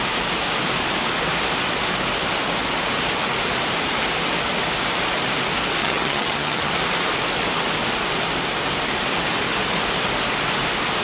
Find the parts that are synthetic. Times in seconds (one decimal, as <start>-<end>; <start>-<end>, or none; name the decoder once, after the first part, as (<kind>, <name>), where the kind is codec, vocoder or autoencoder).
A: 5.8-6.7 (vocoder, HiFi-GAN)